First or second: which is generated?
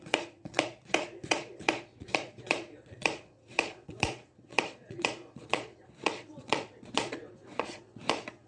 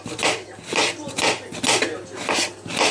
first